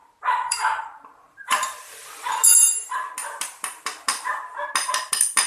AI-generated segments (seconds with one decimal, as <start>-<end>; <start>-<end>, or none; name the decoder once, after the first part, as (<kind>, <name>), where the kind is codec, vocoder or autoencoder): 0.0-2.0 (vocoder, BigVGAN v2)

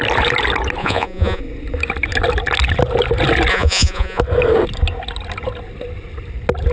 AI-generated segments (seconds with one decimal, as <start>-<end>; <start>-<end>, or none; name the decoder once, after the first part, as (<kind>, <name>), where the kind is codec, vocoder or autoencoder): 0.8-1.4 (vocoder, Vocos); 3.5-4.2